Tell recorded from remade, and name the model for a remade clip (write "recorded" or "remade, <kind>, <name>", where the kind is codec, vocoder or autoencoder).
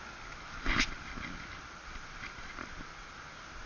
recorded